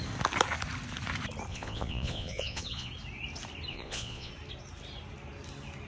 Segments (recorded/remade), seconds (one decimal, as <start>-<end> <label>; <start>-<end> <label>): 0.0-1.5 recorded; 1.5-2.9 remade; 2.9-3.7 recorded; 3.7-4.3 remade; 4.3-5.9 recorded